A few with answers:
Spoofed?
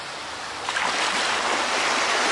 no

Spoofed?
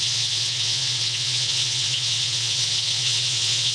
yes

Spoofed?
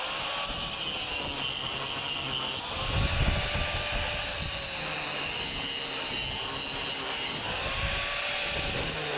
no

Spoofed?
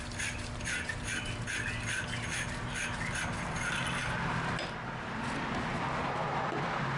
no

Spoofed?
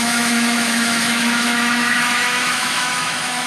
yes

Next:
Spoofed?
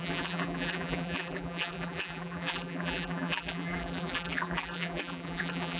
yes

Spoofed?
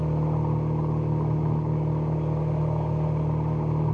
no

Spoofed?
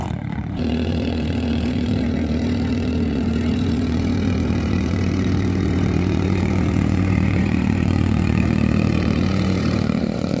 yes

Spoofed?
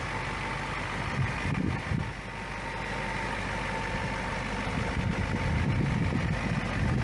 no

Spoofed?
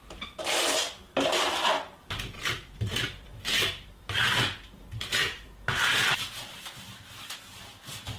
yes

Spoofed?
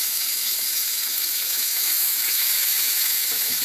yes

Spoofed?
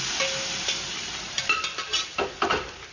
no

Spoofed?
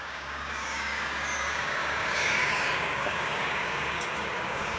yes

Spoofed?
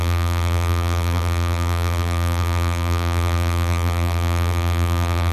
yes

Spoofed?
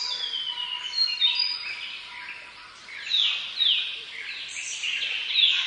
no